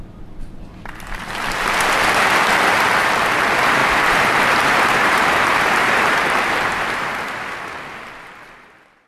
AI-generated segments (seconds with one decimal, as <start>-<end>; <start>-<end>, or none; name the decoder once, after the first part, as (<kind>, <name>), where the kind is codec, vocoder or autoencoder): 3.8-7.1 (vocoder, BigVGAN v2)